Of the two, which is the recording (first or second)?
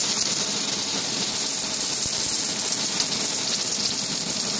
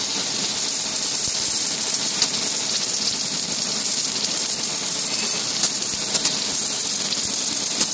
first